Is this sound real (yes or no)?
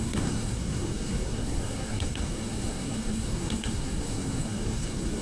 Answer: no